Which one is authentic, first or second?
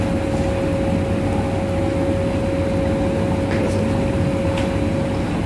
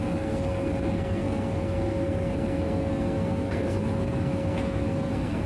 first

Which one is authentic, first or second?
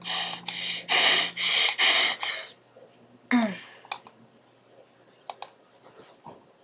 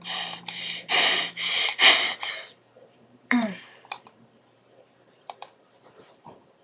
first